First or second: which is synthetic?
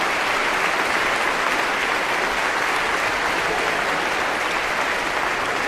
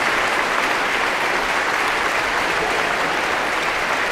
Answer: second